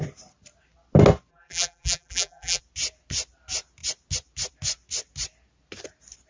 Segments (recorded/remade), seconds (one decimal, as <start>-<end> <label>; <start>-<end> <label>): 0.0-1.3 recorded; 1.3-2.6 remade; 2.6-6.3 recorded